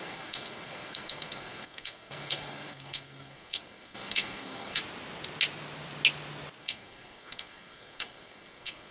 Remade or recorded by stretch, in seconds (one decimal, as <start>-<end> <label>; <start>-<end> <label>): 0.0-4.8 remade; 4.8-6.6 recorded; 6.6-8.9 remade